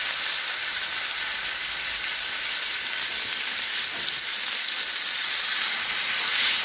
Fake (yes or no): yes